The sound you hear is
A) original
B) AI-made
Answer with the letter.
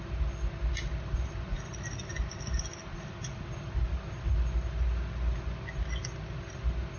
A